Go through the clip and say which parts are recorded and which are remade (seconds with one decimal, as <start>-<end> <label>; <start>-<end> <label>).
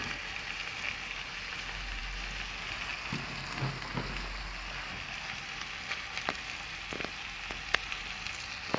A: 0.0-8.8 recorded